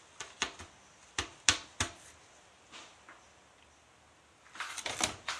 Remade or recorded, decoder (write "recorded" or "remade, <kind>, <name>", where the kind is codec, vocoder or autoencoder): recorded